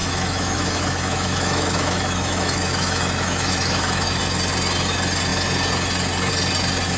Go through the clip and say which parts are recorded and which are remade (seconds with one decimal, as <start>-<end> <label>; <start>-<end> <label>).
0.0-4.2 remade; 4.2-7.0 recorded